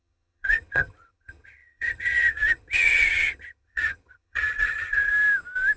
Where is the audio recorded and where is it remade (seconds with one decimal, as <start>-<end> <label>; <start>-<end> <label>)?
0.0-5.1 remade; 5.1-5.8 recorded